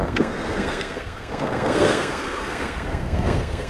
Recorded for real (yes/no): no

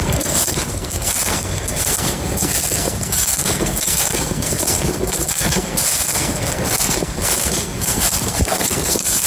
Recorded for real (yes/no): no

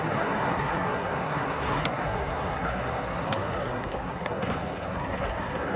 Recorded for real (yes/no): no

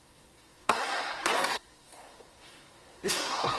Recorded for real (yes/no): no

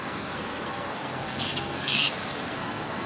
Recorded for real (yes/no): no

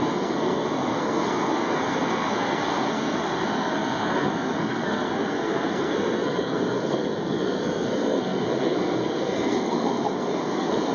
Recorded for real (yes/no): no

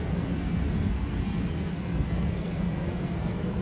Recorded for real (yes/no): no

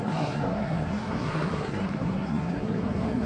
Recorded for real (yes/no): no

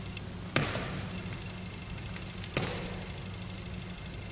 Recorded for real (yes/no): yes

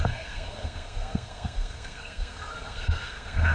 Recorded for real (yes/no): no